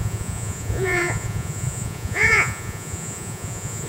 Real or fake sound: fake